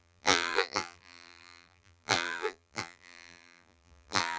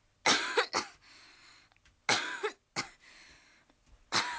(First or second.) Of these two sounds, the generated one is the first